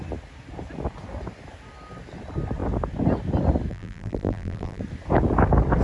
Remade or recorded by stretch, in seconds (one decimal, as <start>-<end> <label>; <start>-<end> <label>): 0.0-3.7 recorded; 3.7-4.8 remade; 4.8-5.8 recorded